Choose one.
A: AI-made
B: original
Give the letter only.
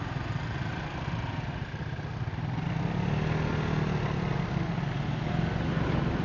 B